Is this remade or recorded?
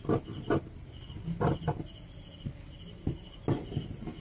recorded